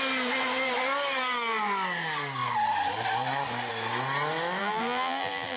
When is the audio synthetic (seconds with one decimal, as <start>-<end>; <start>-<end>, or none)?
4.6-5.6